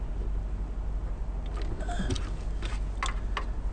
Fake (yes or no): no